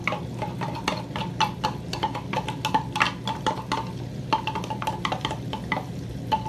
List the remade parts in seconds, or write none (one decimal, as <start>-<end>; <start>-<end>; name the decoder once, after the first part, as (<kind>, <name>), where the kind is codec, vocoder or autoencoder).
none